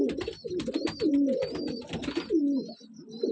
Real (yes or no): yes